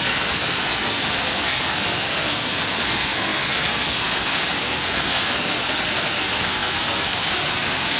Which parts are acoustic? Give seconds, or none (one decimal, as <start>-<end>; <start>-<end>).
none